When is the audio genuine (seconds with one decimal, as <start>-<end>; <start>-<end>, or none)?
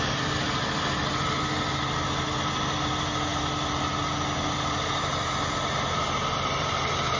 0.0-7.2